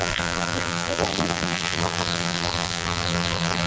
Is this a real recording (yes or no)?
no